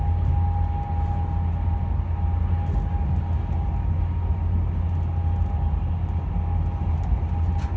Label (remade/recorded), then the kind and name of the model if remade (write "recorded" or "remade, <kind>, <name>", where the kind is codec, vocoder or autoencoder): recorded